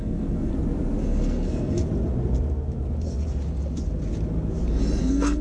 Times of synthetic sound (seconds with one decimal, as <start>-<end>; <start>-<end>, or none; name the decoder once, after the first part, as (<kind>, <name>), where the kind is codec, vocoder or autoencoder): 0.0-0.5 (codec, SNAC); 1.0-1.8; 5.0-5.4